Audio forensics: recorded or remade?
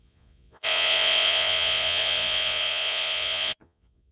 remade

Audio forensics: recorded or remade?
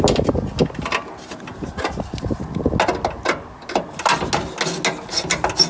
recorded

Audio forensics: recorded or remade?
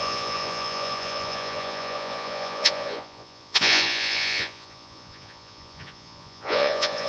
remade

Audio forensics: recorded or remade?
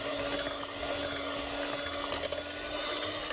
recorded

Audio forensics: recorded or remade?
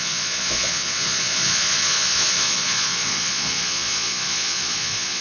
remade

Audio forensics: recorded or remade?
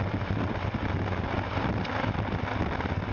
recorded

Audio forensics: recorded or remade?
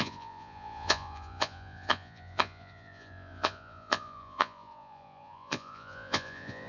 remade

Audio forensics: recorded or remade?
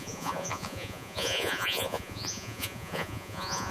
remade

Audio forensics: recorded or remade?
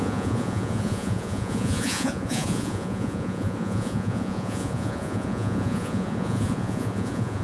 remade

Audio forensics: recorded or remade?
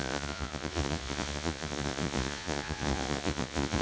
remade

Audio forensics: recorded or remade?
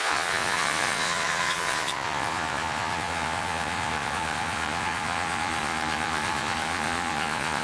remade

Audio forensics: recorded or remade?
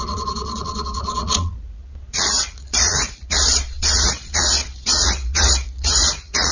remade